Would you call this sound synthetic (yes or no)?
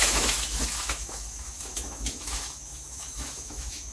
yes